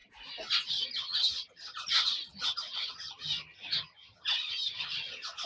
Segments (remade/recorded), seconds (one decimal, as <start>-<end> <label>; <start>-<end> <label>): 0.0-0.7 recorded; 0.7-5.5 remade